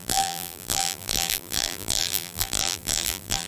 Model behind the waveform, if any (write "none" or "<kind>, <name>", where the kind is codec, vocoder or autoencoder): vocoder, BigVGAN v2